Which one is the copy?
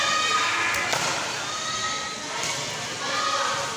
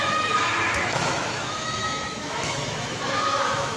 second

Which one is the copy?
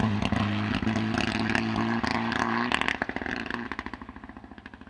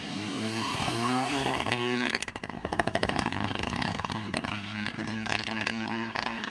second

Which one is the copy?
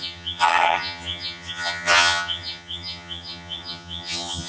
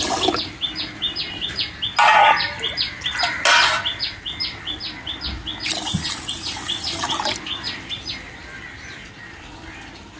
first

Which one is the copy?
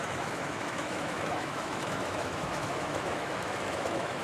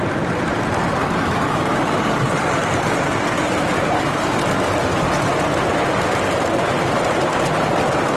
first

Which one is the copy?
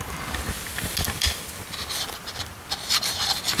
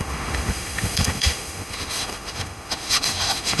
second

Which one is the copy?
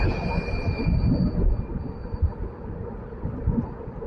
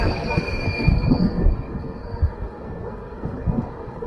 second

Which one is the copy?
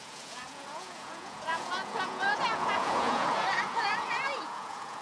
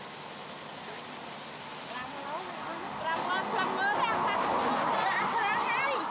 first